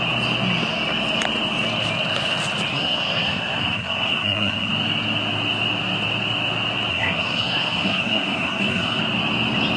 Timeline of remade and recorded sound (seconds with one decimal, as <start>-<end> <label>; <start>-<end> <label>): 0.0-2.7 recorded; 2.7-4.7 remade; 4.7-6.9 recorded; 6.9-9.0 remade; 9.0-9.8 recorded